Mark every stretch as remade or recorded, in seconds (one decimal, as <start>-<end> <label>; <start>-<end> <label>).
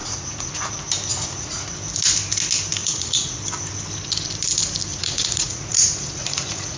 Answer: 0.0-0.7 remade; 0.7-1.1 recorded; 1.1-1.7 remade; 1.7-2.8 recorded; 2.8-3.4 remade; 3.4-4.9 recorded; 4.9-6.8 remade